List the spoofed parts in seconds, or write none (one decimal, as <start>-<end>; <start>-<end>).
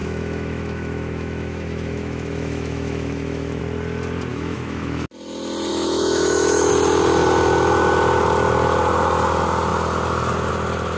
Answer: 0.0-3.6; 4.3-5.1; 5.7-6.7